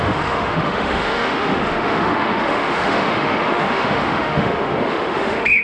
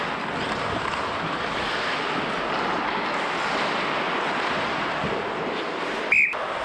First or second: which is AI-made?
first